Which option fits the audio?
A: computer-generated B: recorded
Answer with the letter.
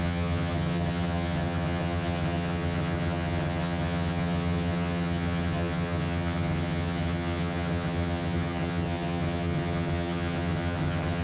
A